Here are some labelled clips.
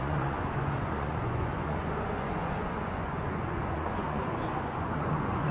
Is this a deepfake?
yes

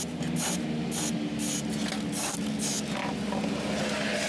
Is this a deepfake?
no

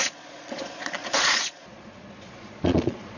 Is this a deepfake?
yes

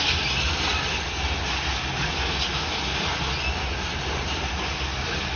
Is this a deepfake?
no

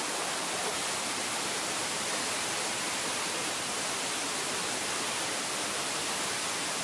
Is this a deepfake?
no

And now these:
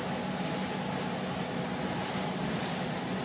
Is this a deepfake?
no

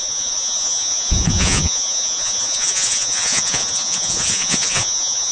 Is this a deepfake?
yes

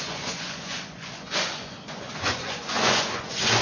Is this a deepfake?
yes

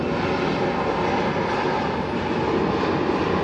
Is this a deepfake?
no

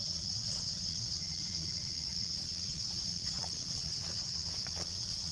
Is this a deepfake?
yes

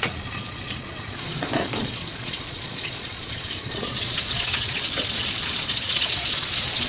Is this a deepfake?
yes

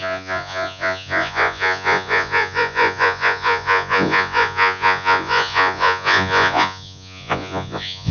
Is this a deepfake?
yes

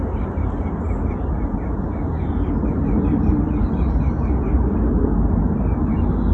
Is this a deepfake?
no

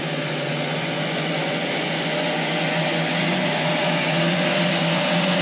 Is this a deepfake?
yes